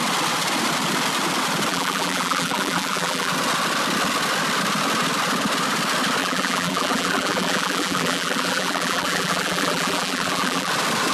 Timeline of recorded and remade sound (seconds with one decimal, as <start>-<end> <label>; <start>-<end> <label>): 0.0-1.7 recorded; 1.7-3.3 remade; 3.3-6.2 recorded; 6.2-10.7 remade; 10.7-11.1 recorded

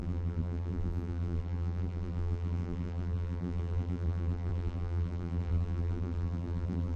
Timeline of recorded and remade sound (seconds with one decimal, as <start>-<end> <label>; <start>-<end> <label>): 0.0-7.0 remade

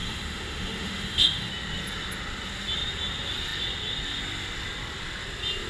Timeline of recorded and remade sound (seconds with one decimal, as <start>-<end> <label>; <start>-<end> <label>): 0.0-1.5 remade; 1.5-5.7 recorded

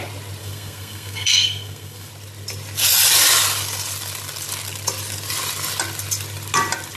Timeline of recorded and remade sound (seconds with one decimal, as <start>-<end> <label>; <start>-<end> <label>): 0.0-0.4 recorded; 0.4-2.1 remade; 2.1-7.0 recorded

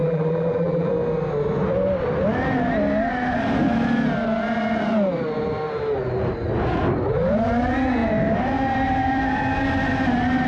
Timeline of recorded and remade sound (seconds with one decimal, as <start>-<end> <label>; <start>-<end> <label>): 0.0-0.9 remade; 0.9-10.5 recorded

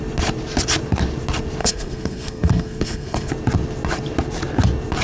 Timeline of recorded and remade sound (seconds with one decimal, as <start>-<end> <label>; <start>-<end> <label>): 0.0-1.6 recorded; 1.6-3.3 remade; 3.3-5.0 recorded

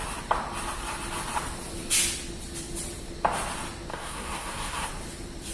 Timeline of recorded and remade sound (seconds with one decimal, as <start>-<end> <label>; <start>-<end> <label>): 0.0-3.9 recorded; 3.9-4.9 remade; 4.9-5.5 recorded